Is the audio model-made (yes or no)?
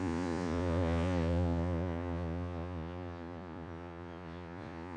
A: yes